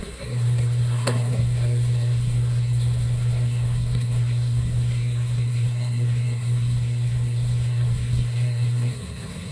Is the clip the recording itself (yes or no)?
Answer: no